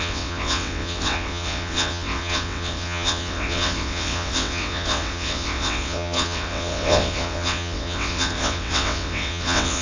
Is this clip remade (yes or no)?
yes